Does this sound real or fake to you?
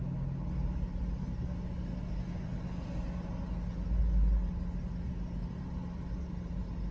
real